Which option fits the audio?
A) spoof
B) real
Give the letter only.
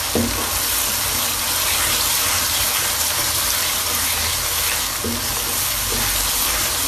B